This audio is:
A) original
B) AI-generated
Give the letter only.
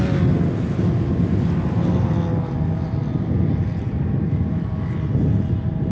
A